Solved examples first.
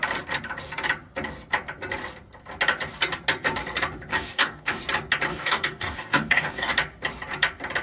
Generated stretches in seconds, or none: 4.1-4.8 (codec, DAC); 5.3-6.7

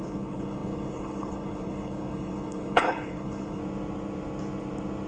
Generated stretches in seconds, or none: 0.0-3.6 (codec, HILCodec)

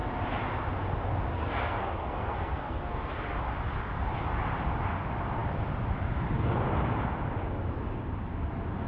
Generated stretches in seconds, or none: 1.3-3.1 (codec, SNAC)

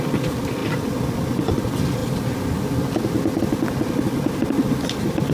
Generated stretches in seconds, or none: 0.6-1.6 (vocoder, BigVGAN v2)